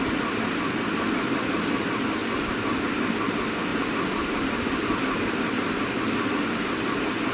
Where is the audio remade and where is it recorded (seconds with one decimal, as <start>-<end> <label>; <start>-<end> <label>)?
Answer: 0.0-3.7 recorded; 3.7-6.3 remade; 6.3-7.3 recorded